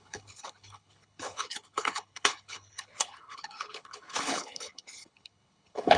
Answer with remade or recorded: remade